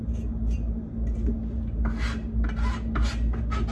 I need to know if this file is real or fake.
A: real